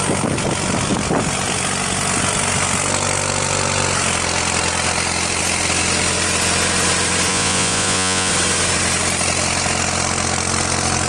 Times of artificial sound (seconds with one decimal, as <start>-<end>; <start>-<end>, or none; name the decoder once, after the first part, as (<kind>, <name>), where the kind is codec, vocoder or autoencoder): 7.3-8.3 (vocoder, Vocos)